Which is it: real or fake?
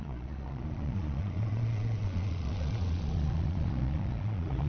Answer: fake